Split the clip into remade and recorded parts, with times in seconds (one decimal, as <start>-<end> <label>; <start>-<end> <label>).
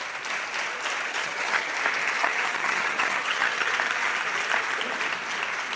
0.0-1.1 recorded; 1.1-1.7 remade; 1.7-2.2 recorded; 2.2-3.7 remade; 3.7-5.8 recorded